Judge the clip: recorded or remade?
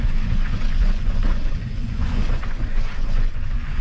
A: remade